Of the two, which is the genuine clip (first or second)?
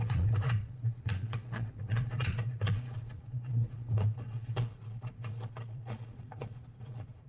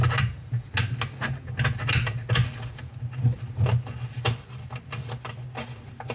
second